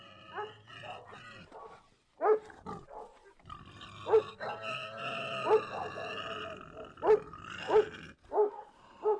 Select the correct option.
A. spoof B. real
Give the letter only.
B